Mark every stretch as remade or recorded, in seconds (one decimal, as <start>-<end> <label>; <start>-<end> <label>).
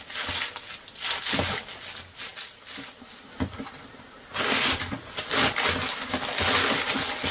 0.0-7.3 recorded